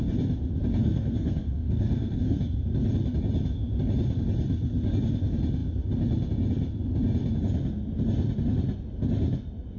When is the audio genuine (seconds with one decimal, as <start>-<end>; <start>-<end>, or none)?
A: 0.0-0.8; 2.4-9.8